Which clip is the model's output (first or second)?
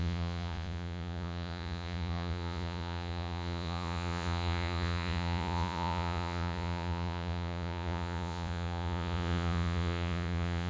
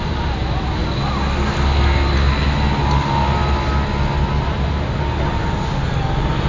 first